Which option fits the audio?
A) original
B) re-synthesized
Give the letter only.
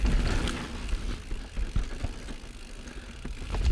A